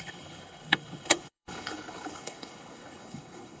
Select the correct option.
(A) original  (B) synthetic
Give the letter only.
B